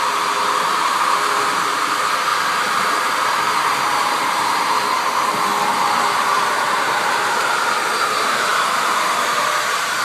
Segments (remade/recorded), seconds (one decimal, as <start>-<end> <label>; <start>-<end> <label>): 0.0-10.0 remade